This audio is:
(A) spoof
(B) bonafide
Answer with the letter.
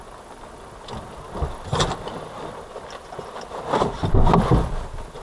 B